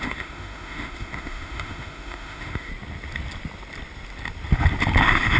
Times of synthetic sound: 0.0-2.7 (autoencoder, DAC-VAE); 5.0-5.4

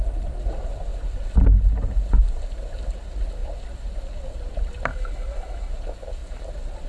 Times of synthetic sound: 4.9-5.7 (autoencoder, DAC-VAE)